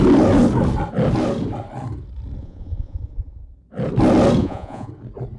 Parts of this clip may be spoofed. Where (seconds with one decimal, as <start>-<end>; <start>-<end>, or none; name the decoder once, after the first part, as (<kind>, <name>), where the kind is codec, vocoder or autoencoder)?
2.4-3.4 (vocoder, Vocos); 4.4-4.9